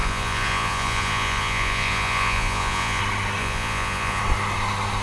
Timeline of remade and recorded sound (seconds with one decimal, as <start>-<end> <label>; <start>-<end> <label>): 0.0-3.0 remade; 3.0-3.4 recorded; 3.4-4.2 remade; 4.2-5.0 recorded